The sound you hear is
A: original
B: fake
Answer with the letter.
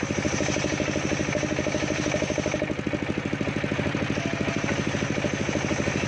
A